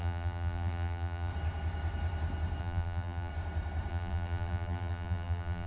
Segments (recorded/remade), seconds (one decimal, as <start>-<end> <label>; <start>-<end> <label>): 0.0-1.3 remade; 1.3-2.6 recorded; 2.6-3.3 remade; 3.3-3.9 recorded; 3.9-5.7 remade